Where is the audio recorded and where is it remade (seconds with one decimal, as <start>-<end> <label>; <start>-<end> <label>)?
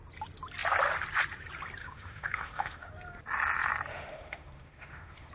0.0-1.8 recorded; 1.8-2.9 remade; 2.9-3.9 recorded; 3.9-5.3 remade